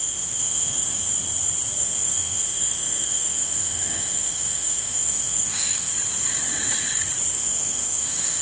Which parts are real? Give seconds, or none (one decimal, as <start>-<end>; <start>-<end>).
1.1-1.8; 5.9-7.3